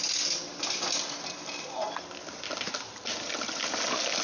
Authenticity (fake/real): real